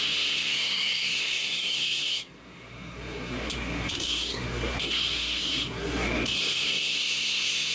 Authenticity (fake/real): fake